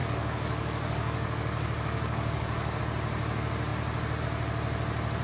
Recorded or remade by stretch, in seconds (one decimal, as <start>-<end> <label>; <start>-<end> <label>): 0.0-2.8 remade; 2.8-5.2 recorded

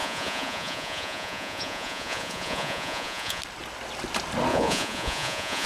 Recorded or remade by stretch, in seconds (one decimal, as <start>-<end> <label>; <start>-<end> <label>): 0.0-3.4 remade; 3.4-4.5 recorded; 4.5-5.7 remade

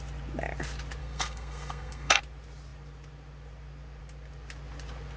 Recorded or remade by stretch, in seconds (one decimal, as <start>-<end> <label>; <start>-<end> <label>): 0.0-1.0 recorded; 1.0-2.2 remade; 2.2-5.2 recorded

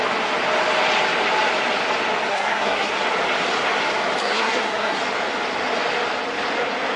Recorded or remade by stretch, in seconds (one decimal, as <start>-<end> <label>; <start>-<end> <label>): 0.0-2.3 recorded; 2.3-2.9 remade; 2.9-4.2 recorded; 4.2-5.0 remade; 5.0-7.0 recorded

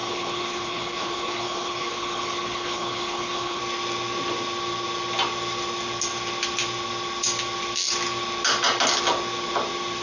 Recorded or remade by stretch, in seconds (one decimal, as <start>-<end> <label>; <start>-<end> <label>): 0.0-3.6 remade; 3.6-10.0 recorded

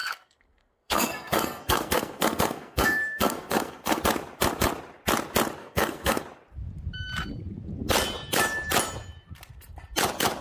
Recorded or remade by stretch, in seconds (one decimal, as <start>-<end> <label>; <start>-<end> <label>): 0.0-4.0 remade; 4.0-5.6 recorded; 5.6-6.2 remade; 6.2-10.4 recorded

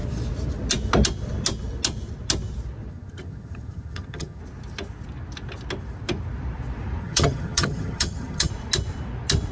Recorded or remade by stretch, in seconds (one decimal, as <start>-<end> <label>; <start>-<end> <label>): 0.0-2.9 recorded; 2.9-4.4 remade; 4.4-7.0 recorded; 7.0-8.5 remade; 8.5-9.5 recorded